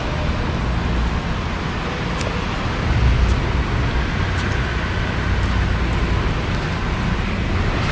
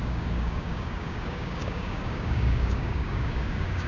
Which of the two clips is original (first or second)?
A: first